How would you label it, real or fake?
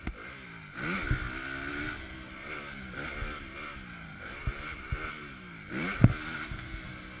real